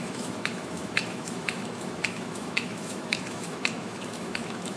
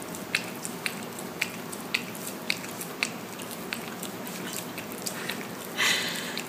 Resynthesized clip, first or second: first